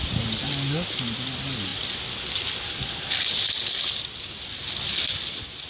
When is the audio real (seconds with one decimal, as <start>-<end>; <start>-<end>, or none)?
0.0-5.7